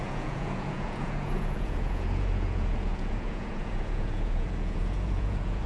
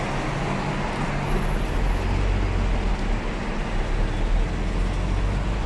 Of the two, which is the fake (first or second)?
first